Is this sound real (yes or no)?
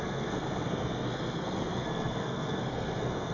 no